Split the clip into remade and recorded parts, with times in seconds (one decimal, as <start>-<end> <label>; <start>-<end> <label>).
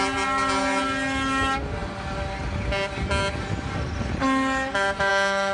0.0-5.5 recorded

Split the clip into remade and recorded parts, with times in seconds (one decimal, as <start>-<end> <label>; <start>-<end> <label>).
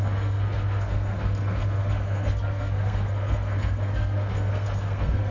0.0-5.3 remade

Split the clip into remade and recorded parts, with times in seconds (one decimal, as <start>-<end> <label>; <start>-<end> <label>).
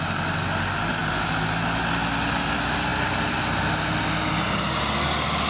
0.0-5.5 recorded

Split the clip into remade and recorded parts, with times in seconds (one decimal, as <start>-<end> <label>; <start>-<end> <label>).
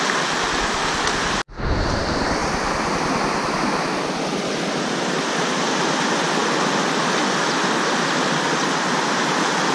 0.0-6.4 recorded; 6.4-7.0 remade; 7.0-9.7 recorded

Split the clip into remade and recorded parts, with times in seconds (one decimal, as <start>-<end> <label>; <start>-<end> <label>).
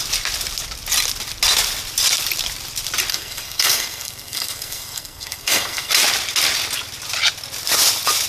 0.0-3.1 recorded; 3.1-5.9 remade; 5.9-8.3 recorded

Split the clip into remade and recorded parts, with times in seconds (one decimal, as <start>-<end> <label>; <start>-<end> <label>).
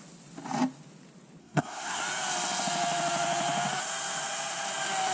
0.0-1.4 recorded; 1.4-2.0 remade; 2.0-5.1 recorded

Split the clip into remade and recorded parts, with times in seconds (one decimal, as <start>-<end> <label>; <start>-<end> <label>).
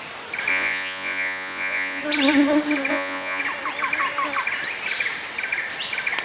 0.0-0.5 recorded; 0.5-2.0 remade; 2.0-2.9 recorded; 2.9-3.4 remade; 3.4-6.2 recorded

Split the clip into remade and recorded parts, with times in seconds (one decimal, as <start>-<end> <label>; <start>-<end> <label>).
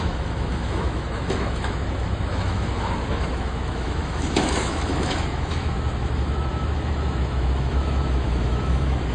0.0-9.1 remade